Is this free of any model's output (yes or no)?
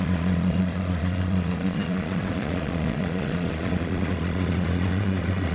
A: no